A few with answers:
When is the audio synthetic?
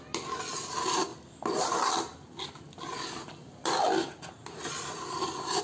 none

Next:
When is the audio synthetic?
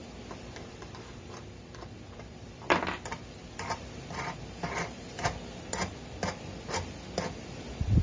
0.0-8.0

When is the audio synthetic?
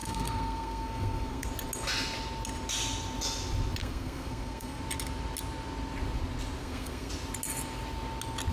0.0-1.5; 3.8-4.8; 6.6-7.1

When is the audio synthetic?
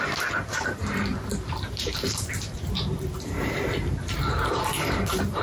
0.0-1.1; 1.6-5.4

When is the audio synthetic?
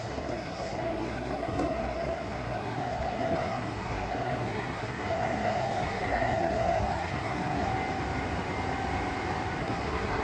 0.0-7.7; 9.6-10.2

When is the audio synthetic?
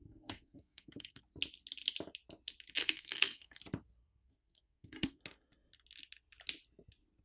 0.0-1.2; 2.8-3.6; 4.0-5.2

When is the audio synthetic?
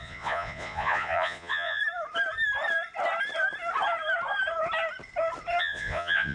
0.0-1.8; 5.6-6.3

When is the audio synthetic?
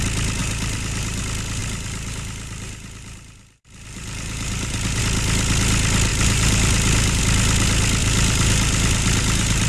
0.4-1.2; 1.6-5.0; 6.1-7.2; 8.0-9.7